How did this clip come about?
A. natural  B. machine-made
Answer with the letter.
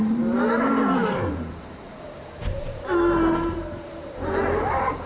B